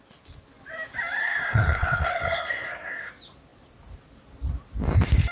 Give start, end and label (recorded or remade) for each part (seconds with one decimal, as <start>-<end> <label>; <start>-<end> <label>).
0.0-1.2 recorded; 1.2-3.1 remade; 3.1-5.3 recorded